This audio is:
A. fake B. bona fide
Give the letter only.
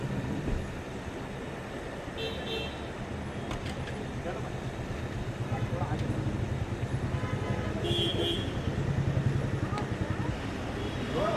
B